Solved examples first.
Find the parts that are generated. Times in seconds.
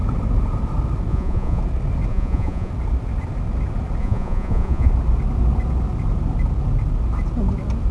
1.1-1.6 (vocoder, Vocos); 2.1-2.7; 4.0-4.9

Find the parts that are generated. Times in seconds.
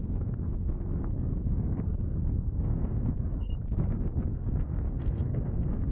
0.0-3.5 (codec, SNAC); 4.3-5.9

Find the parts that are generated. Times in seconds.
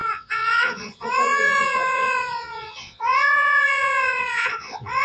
0.0-5.0 (vocoder, Vocos)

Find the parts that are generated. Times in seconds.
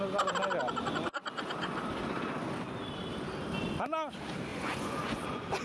4.5-5.6 (vocoder, Vocos)